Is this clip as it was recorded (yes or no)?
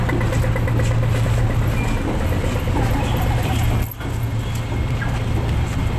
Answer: yes